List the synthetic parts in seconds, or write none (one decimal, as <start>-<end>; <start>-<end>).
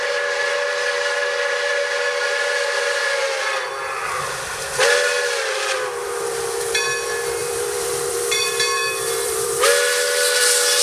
7.4-9.7